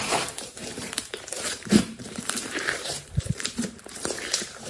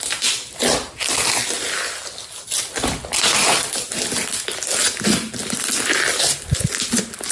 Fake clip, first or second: first